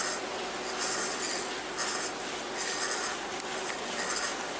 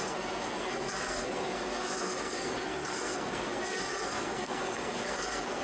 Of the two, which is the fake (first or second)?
second